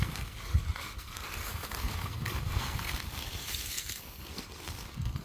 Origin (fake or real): fake